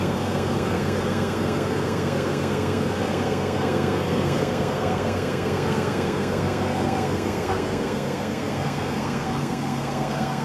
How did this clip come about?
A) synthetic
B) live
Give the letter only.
A